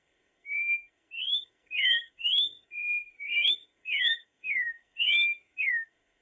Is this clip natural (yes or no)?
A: no